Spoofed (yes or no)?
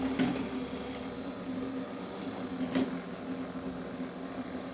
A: no